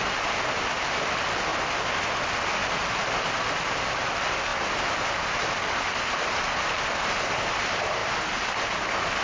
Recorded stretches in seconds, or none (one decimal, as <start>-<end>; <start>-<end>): 0.0-9.2